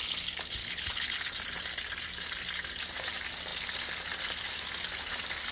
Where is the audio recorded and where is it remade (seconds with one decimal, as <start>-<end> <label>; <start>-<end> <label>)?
0.0-0.6 recorded; 0.6-1.3 remade; 1.3-5.5 recorded